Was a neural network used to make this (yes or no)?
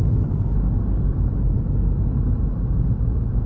no